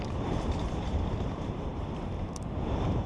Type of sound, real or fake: fake